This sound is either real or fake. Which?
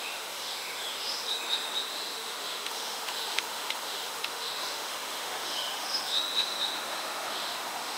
fake